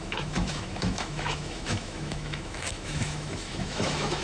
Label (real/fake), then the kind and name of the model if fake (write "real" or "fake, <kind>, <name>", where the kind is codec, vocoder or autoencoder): fake, autoencoder, DAC-VAE